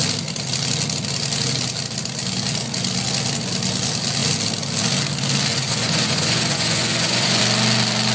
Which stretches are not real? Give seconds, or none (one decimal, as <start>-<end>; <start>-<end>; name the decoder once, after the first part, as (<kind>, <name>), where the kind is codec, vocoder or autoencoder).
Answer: 5.5-7.4 (vocoder, Vocos)